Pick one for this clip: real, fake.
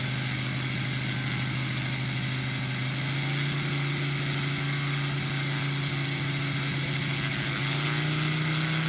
real